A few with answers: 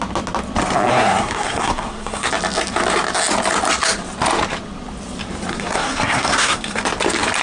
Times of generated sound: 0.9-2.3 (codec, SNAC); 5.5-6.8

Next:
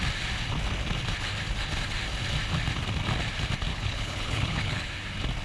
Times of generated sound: 3.7-4.9 (codec, HILCodec)